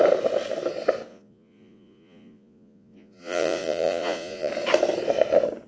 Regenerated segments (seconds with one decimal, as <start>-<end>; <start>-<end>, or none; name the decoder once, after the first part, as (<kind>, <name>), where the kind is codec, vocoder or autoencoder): 1.1-4.5 (vocoder, Vocos)